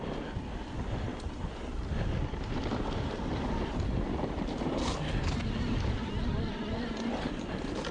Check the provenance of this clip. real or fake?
real